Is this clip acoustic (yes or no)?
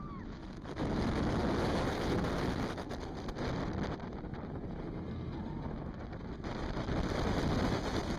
yes